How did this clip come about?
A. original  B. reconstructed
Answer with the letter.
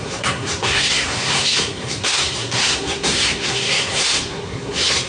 B